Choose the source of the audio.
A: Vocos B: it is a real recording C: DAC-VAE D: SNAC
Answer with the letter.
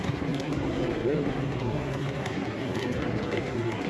D